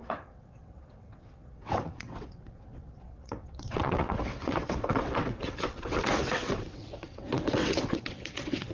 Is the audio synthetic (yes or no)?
yes